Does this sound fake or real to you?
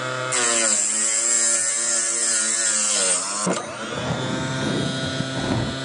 real